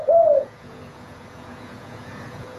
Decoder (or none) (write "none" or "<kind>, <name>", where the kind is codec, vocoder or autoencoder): vocoder, Vocos